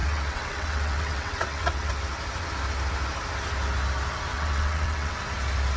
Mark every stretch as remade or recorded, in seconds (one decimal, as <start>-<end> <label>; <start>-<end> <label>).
0.0-1.9 remade; 1.9-4.3 recorded; 4.3-5.2 remade; 5.2-5.8 recorded